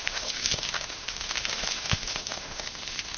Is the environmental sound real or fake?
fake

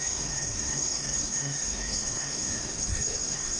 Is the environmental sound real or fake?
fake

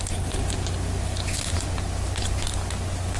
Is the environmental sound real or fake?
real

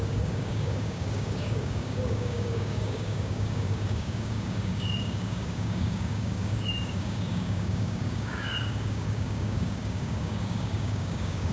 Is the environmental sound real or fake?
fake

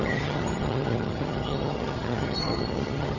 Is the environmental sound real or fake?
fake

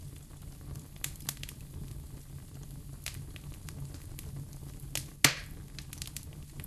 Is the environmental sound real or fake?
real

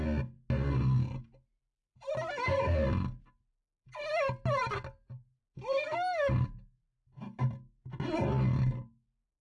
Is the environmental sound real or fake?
real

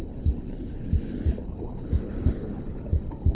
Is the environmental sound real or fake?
fake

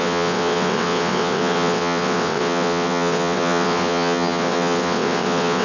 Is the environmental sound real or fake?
fake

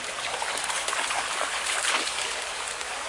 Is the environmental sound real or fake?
fake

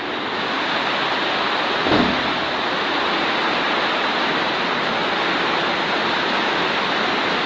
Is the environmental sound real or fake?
real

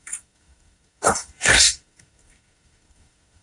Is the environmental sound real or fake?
fake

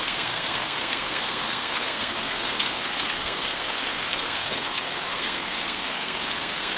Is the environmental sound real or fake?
fake